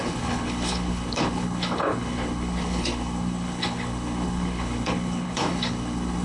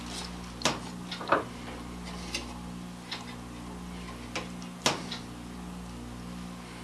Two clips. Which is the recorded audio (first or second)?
second